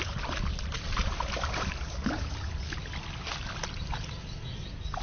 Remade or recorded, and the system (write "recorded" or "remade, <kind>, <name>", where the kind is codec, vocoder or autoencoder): recorded